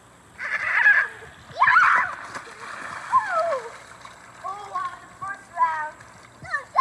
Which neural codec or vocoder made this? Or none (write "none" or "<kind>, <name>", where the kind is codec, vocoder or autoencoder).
none